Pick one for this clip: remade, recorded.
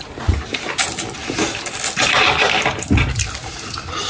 recorded